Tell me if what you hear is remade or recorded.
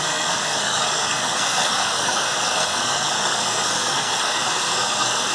remade